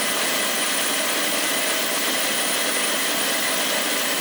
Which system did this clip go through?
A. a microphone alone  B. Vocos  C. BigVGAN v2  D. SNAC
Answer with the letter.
C